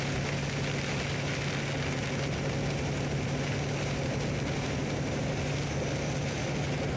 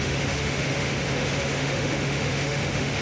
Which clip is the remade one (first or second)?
second